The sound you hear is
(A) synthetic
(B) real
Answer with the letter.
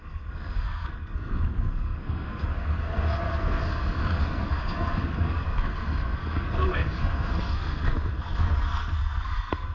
A